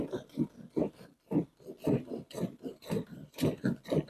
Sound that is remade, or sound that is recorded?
remade